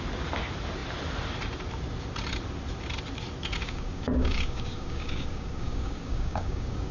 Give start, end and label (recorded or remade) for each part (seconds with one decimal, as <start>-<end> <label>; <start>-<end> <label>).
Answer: 0.0-3.6 recorded; 3.6-6.9 remade